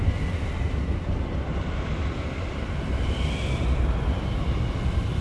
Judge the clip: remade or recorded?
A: recorded